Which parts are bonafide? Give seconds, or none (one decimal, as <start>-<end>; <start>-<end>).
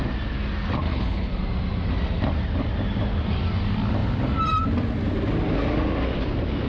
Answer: 0.0-0.9; 1.4-6.7